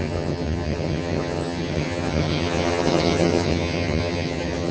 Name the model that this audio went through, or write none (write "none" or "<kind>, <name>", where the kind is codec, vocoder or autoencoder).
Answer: vocoder, HiFi-GAN